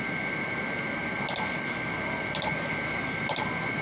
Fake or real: real